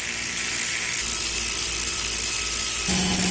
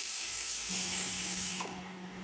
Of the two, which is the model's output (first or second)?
second